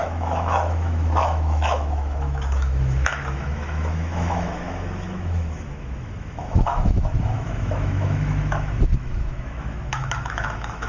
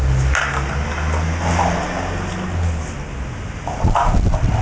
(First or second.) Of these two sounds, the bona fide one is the second